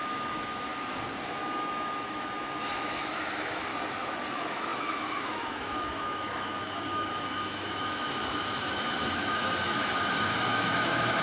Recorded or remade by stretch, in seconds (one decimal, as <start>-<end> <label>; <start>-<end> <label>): 0.0-0.7 remade; 0.7-1.2 recorded; 1.2-3.7 remade; 3.7-4.3 recorded; 4.3-11.2 remade